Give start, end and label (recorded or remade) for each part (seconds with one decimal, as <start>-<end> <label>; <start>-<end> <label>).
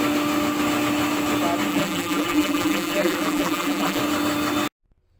0.0-1.7 recorded; 1.7-4.0 remade; 4.0-5.2 recorded